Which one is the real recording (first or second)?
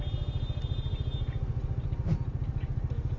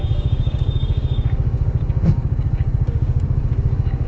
first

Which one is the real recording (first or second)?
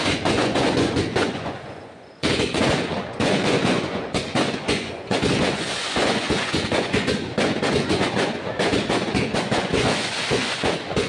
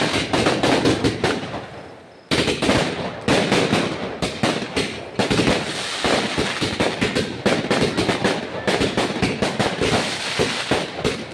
second